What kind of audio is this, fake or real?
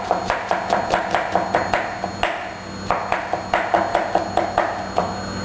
real